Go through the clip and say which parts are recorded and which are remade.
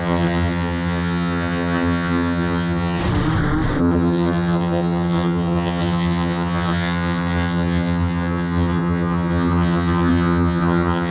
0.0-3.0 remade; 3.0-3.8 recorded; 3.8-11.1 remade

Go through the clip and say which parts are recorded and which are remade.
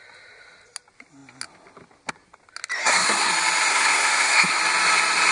0.0-2.8 recorded; 2.8-3.3 remade; 3.3-3.7 recorded; 3.7-4.6 remade; 4.6-5.3 recorded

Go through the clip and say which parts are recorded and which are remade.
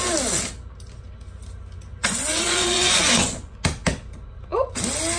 0.0-2.0 recorded; 2.0-3.6 remade; 3.6-5.2 recorded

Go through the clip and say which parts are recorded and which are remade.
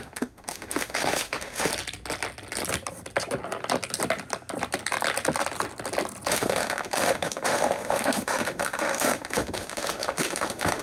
0.0-1.7 remade; 1.7-6.3 recorded; 6.3-10.8 remade